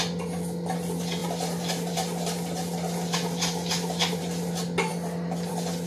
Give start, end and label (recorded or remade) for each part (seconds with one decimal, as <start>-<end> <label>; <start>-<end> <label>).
0.0-1.2 recorded; 1.2-4.5 remade; 4.5-5.9 recorded